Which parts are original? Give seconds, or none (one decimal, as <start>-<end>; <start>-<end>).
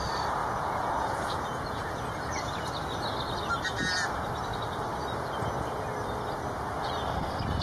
0.0-0.4; 2.5-7.6